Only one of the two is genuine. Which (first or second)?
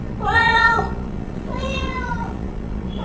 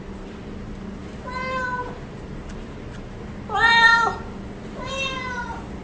second